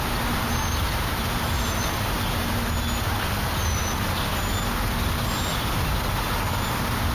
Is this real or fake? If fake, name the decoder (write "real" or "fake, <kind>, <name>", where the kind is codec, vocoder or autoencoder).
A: real